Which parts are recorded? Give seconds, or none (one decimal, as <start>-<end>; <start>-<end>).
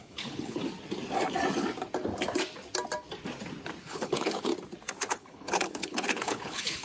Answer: 0.6-3.8; 4.5-5.1